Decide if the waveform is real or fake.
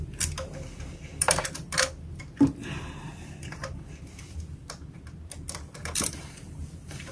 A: fake